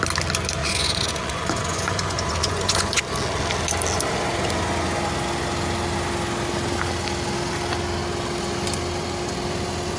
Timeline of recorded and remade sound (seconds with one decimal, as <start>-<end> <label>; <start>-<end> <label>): 0.0-0.6 recorded; 0.6-3.0 remade; 3.0-10.0 recorded